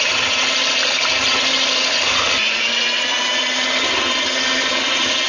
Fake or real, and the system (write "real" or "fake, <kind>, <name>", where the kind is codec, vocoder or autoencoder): real